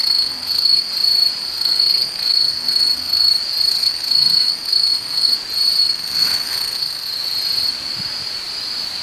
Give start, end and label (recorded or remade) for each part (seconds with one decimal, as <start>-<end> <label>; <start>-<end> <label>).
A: 0.0-0.9 remade; 0.9-1.4 recorded; 1.4-3.3 remade; 3.3-3.7 recorded; 3.7-5.3 remade; 5.3-5.8 recorded; 5.8-7.1 remade; 7.1-9.0 recorded